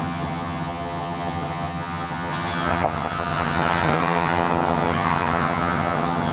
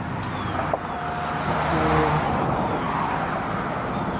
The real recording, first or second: second